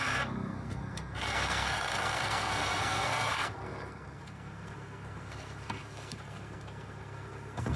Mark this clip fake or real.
fake